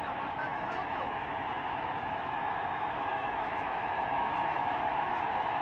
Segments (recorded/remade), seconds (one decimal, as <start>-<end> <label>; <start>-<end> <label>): 0.0-5.6 remade